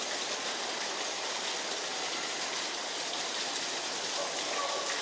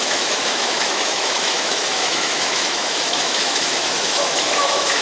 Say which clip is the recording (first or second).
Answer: first